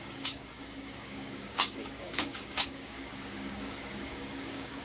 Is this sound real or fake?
fake